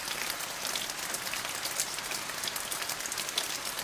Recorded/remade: recorded